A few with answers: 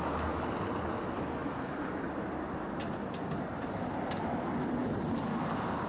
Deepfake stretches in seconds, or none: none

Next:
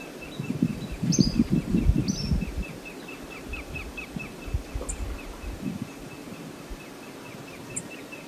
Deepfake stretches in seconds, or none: 0.7-1.8 (vocoder, BigVGAN v2)

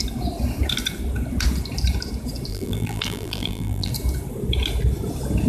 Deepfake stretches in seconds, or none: 2.5-3.9 (vocoder, BigVGAN v2)

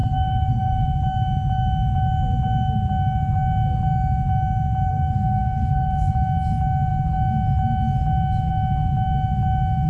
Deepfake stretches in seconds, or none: 0.0-1.0 (codec, SNAC); 4.9-6.1

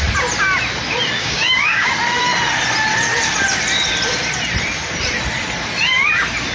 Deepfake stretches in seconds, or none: 1.2-1.9 (codec, DAC)